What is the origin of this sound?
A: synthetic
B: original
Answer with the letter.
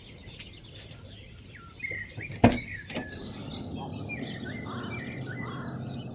B